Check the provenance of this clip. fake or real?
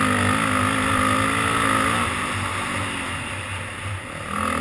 real